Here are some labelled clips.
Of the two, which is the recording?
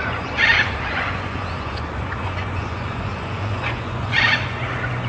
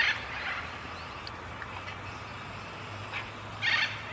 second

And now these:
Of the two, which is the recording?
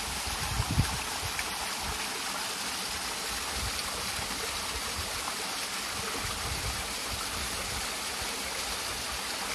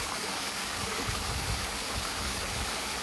first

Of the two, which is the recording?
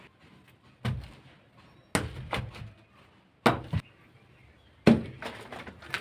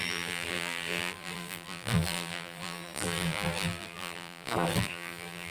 first